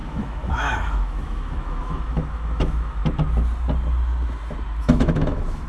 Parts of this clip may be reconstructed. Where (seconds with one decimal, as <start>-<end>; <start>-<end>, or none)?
0.0-3.0; 4.8-5.7